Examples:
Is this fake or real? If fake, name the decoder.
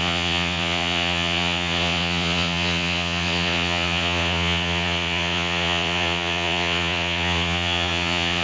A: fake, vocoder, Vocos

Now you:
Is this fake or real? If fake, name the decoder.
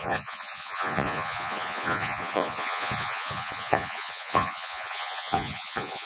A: fake, vocoder, Vocos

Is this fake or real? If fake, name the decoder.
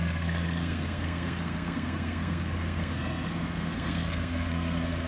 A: fake, codec, SNAC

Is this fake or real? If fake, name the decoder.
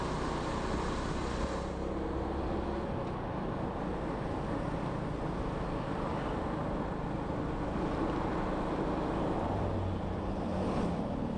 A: real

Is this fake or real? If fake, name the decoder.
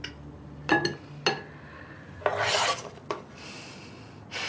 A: real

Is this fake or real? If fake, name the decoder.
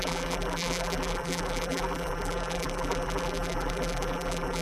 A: fake, vocoder, BigVGAN v2